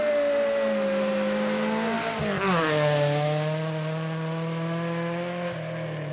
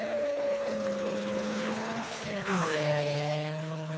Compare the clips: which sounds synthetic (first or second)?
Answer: second